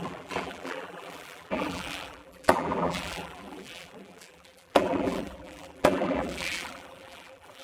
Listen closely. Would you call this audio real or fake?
fake